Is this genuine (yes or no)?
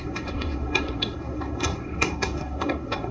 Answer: no